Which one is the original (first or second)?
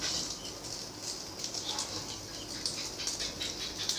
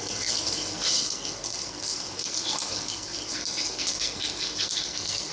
first